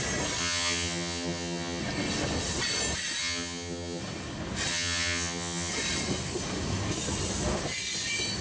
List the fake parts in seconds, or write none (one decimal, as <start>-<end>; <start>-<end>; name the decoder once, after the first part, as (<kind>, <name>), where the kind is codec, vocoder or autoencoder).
0.4-1.8 (vocoder, HiFi-GAN); 3.2-4.0; 4.7-5.7